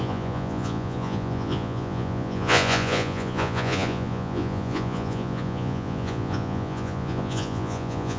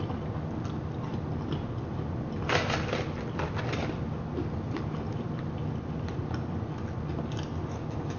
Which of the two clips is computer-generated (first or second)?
first